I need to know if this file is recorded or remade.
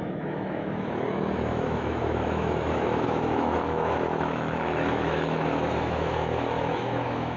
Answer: remade